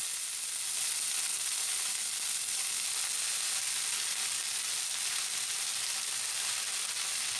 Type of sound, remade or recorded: recorded